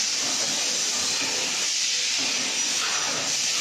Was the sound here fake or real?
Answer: fake